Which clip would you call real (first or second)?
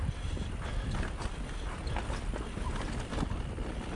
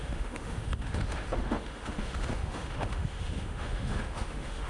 first